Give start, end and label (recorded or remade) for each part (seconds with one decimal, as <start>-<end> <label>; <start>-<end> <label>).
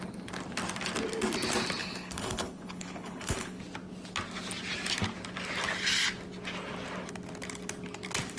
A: 0.0-1.8 recorded; 1.8-3.6 remade; 3.6-8.4 recorded